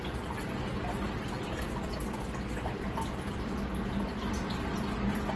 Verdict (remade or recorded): recorded